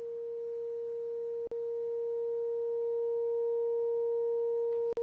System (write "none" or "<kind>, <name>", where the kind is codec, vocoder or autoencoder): none